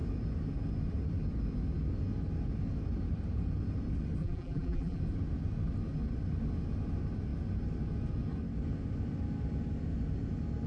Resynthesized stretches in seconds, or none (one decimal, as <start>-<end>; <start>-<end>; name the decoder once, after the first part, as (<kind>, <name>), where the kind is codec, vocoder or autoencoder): 4.2-5.0 (vocoder, BigVGAN v2)